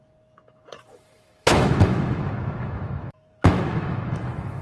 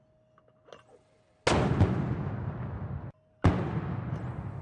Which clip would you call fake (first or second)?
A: first